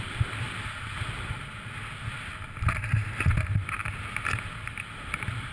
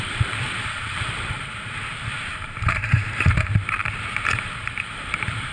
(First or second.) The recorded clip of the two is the first